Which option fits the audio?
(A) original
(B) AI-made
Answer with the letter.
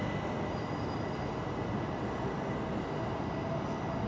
A